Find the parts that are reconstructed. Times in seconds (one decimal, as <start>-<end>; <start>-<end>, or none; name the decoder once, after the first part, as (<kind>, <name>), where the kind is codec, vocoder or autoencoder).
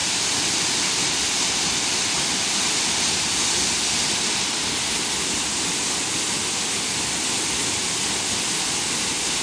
none